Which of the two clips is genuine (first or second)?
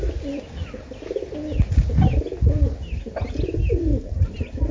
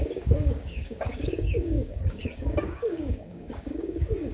first